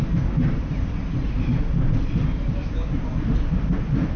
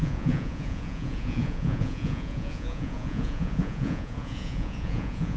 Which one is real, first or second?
first